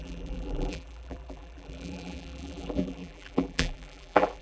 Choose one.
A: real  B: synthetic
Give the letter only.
B